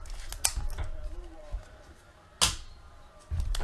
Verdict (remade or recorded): recorded